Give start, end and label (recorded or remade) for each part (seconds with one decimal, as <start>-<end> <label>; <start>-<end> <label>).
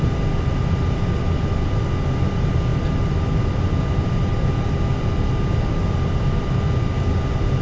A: 0.0-7.6 recorded